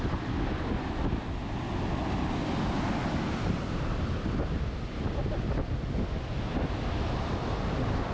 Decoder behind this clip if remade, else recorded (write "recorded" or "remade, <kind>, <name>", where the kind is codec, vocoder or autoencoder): recorded